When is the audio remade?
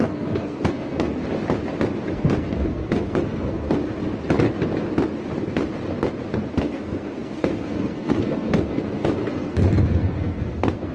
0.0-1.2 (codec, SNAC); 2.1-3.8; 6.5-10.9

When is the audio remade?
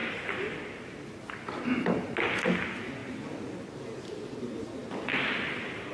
0.0-0.8 (vocoder, BigVGAN v2); 4.8-5.9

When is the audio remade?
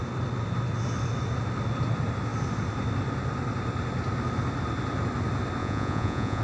5.6-6.4 (vocoder, Vocos)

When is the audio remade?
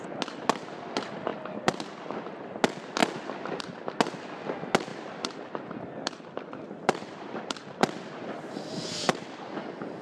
1.3-2.5 (vocoder, BigVGAN v2); 3.0-3.6; 4.9-8.3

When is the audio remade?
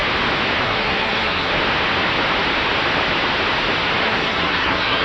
0.6-1.5 (codec, SNAC); 4.0-5.0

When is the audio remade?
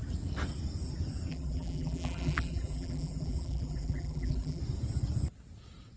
1.3-4.6 (vocoder, BigVGAN v2)